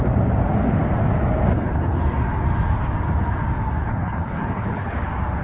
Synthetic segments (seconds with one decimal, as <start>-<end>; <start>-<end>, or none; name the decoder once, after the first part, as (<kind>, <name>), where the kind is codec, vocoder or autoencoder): 1.5-2.0 (codec, HILCodec); 3.8-5.0